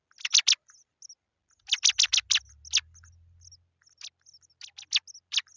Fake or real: real